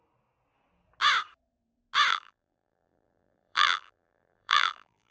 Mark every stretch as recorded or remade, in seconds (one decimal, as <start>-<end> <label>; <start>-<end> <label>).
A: 0.0-2.1 recorded; 2.1-5.1 remade